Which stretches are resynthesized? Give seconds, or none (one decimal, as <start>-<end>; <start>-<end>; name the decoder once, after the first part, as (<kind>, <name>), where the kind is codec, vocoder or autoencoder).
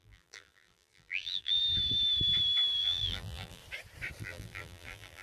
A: 0.0-1.6 (vocoder, BigVGAN v2); 2.8-3.6; 4.2-5.2